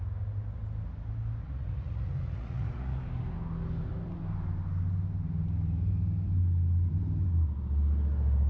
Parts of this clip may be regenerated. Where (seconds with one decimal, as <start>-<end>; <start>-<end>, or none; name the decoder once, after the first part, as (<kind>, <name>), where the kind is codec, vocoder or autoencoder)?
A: 1.4-3.0 (vocoder, Vocos)